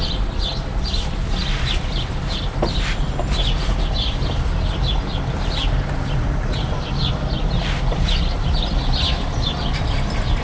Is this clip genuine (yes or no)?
no